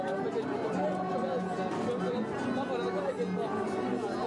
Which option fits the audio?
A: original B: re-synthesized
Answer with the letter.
A